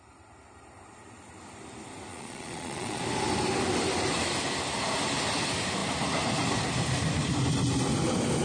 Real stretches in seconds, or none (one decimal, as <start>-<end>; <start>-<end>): 0.0-2.1; 3.0-8.4